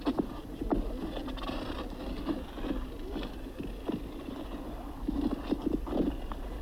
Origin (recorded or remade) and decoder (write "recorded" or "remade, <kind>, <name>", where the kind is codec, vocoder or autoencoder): recorded